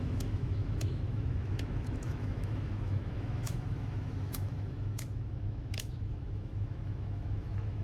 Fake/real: fake